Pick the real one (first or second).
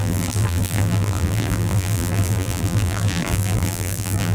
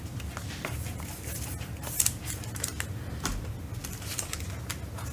second